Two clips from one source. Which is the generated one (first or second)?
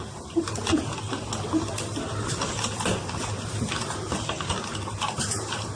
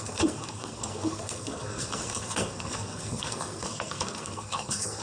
second